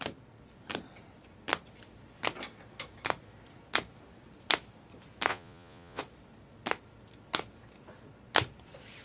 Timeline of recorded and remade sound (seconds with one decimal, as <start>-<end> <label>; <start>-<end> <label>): 0.0-5.3 recorded; 5.3-6.0 remade; 6.0-9.0 recorded